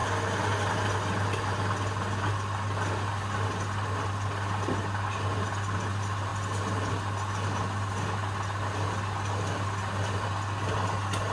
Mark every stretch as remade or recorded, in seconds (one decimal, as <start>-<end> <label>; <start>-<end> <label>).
0.0-11.3 recorded